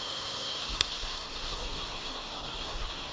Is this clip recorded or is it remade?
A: remade